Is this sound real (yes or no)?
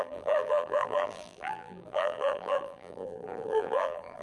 no